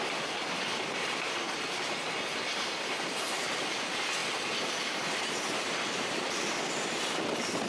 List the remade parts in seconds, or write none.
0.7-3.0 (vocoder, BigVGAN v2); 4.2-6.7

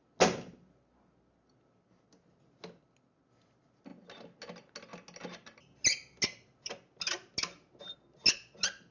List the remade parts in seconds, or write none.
none

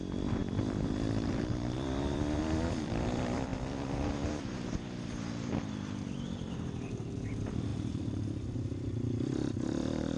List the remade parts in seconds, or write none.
0.0-3.5 (vocoder, BigVGAN v2); 4.3-10.2

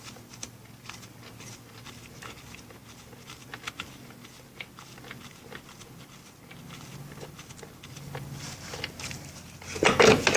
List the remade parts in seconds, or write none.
none

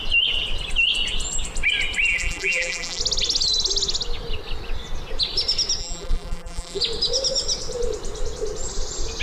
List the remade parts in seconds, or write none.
2.1-3.0 (vocoder, BigVGAN v2); 5.8-6.8

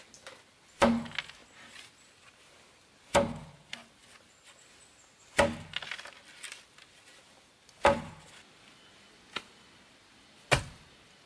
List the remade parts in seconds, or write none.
none

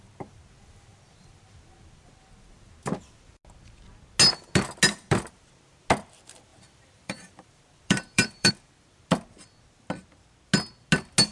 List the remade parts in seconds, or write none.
6.5-8.5 (vocoder, BigVGAN v2)